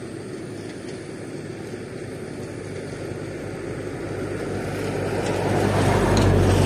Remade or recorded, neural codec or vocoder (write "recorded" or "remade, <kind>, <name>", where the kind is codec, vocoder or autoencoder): recorded